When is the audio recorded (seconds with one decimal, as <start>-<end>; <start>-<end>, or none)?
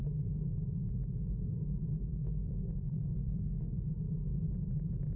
0.0-2.1; 3.9-5.2